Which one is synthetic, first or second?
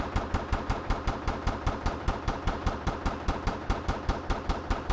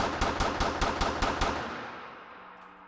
first